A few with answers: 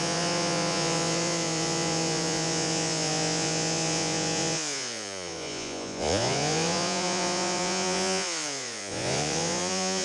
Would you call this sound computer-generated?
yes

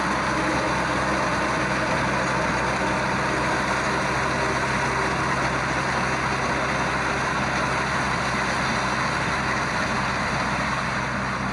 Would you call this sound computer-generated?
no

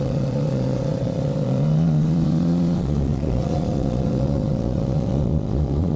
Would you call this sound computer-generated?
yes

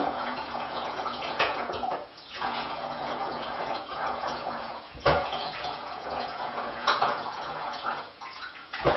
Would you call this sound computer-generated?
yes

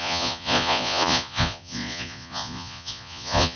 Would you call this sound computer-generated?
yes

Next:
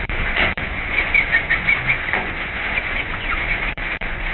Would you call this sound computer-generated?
yes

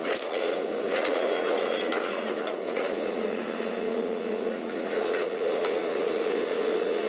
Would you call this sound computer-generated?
yes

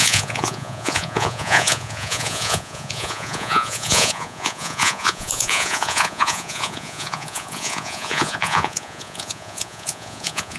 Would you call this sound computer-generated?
yes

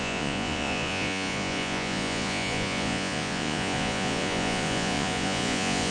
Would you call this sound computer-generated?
yes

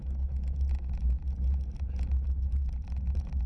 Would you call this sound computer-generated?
no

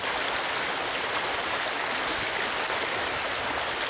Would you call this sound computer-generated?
no